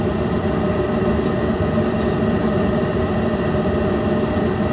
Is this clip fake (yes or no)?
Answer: no